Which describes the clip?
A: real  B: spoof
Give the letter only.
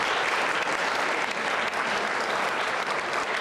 B